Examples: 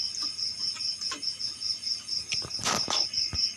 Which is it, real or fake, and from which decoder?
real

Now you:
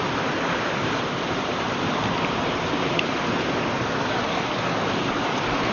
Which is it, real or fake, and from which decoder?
fake, vocoder, BigVGAN v2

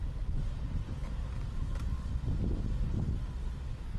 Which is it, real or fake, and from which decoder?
real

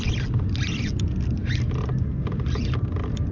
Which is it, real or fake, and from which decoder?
real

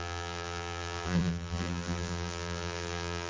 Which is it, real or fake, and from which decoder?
fake, vocoder, BigVGAN v2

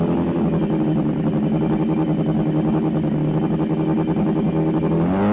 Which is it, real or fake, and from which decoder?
real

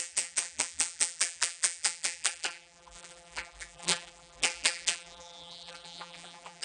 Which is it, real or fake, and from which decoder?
fake, vocoder, BigVGAN v2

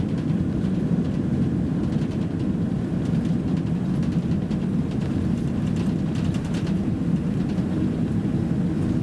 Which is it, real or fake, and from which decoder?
fake, vocoder, BigVGAN v2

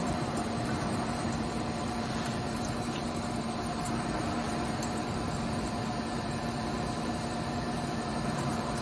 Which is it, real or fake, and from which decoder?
fake, vocoder, BigVGAN v2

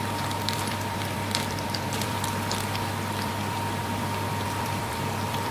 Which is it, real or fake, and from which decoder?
fake, vocoder, BigVGAN v2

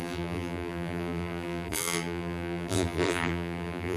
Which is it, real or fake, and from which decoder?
fake, vocoder, BigVGAN v2